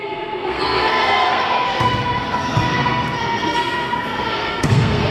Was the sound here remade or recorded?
remade